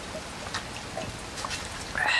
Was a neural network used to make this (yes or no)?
no